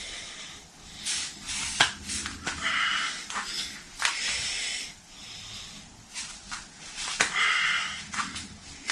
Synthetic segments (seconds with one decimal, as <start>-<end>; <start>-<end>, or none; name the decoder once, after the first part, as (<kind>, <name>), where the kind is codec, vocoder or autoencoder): none